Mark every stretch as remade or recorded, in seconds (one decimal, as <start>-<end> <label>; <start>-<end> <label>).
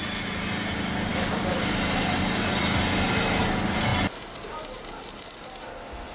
0.0-3.9 remade; 3.9-5.1 recorded; 5.1-6.1 remade